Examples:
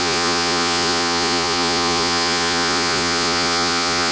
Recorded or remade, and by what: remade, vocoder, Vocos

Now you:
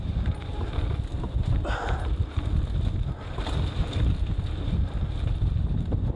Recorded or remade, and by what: recorded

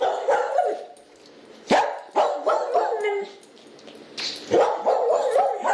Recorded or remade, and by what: recorded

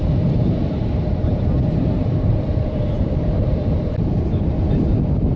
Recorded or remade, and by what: remade, vocoder, BigVGAN v2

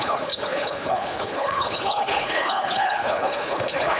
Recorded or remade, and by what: remade, codec, HILCodec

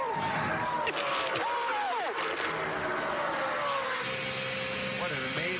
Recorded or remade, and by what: recorded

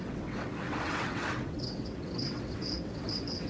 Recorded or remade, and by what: remade, vocoder, WaveNeXt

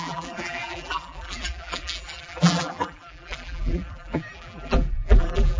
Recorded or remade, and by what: remade, vocoder, BigVGAN v2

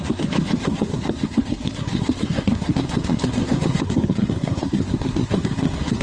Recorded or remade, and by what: remade, codec, SNAC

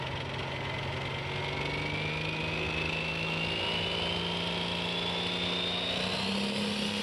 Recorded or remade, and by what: recorded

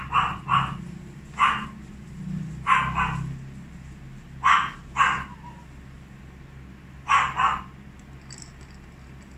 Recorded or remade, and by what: remade, vocoder, BigVGAN v2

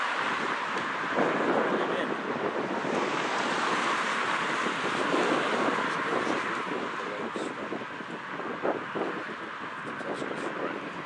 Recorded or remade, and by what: recorded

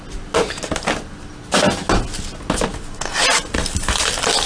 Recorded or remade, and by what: recorded